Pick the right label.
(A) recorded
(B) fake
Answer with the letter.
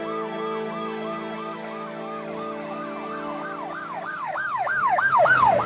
B